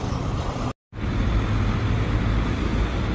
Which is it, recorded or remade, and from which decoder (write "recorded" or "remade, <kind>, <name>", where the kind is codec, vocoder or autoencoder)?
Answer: recorded